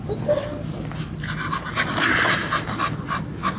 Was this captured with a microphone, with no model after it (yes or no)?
yes